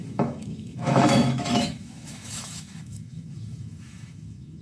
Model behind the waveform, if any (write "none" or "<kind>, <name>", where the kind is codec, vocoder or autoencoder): autoencoder, DAC-VAE